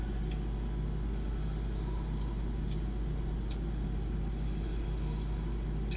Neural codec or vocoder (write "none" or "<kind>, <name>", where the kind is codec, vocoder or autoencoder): none